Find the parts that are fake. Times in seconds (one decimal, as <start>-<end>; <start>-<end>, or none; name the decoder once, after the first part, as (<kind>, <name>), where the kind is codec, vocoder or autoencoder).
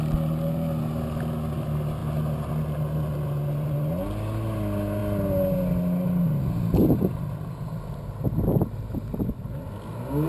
none